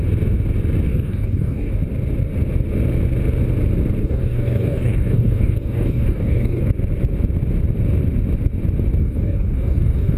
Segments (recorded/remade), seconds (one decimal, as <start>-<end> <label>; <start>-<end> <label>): 0.0-0.9 recorded; 0.9-1.7 remade; 1.7-4.0 recorded; 4.0-6.6 remade; 6.6-9.0 recorded; 9.0-10.2 remade